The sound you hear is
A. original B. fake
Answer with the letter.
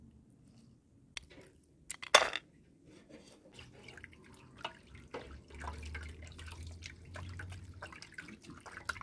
A